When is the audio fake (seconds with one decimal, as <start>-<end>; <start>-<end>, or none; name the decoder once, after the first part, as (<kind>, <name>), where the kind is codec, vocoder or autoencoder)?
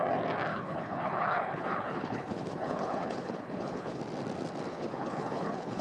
0.5-4.0 (codec, HILCodec); 4.7-5.8